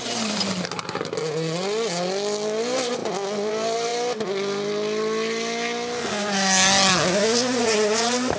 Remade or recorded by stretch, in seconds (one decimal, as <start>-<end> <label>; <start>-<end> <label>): 0.0-8.4 recorded